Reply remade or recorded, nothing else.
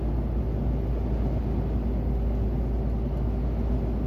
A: recorded